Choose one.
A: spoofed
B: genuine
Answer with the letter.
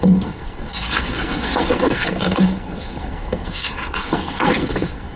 A